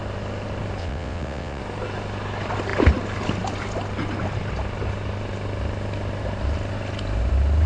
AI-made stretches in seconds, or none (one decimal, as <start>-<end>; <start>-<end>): 0.8-1.6